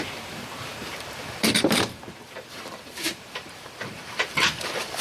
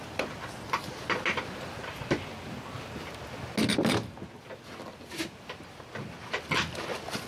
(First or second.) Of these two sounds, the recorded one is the second